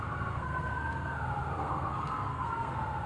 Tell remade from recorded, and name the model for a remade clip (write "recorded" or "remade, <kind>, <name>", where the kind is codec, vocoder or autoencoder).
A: remade, codec, SNAC